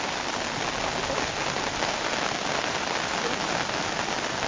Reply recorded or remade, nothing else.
recorded